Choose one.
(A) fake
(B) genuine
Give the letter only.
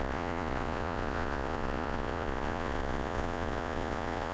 A